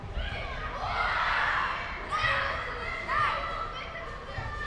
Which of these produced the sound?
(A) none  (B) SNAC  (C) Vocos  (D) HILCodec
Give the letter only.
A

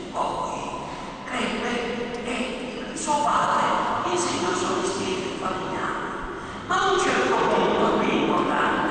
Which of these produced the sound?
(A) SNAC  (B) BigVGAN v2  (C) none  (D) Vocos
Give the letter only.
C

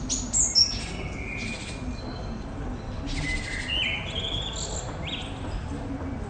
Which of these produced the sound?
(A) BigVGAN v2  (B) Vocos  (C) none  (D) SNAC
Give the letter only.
C